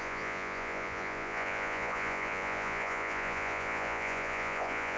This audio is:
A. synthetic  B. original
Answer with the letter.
A